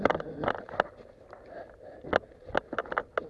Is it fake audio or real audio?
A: real